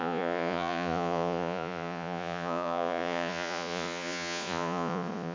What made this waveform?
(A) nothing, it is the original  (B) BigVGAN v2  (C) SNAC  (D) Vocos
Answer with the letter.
D